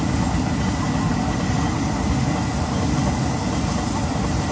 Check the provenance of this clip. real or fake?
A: real